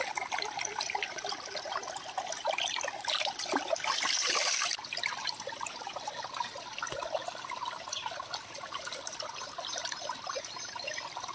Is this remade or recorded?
recorded